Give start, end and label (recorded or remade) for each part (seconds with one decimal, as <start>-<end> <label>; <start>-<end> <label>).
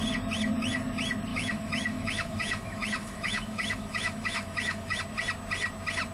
0.0-1.3 recorded; 1.3-5.0 remade; 5.0-6.1 recorded